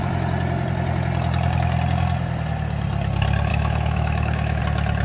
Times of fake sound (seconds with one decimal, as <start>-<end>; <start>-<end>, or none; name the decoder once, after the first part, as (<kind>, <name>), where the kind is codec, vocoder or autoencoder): 3.5-4.6 (autoencoder, DAC-VAE)